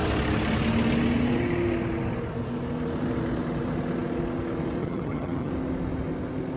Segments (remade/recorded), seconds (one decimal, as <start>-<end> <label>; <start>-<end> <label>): 0.0-4.8 recorded; 4.8-5.5 remade; 5.5-6.6 recorded